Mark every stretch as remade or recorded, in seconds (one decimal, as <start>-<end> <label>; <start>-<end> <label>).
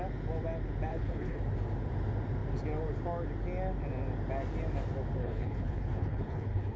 0.0-0.9 recorded; 0.9-1.4 remade; 1.4-5.2 recorded; 5.2-6.8 remade